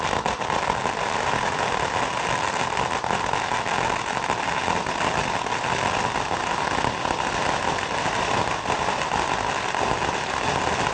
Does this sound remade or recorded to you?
recorded